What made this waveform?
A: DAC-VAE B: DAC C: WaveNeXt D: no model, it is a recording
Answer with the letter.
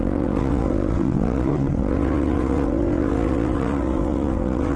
C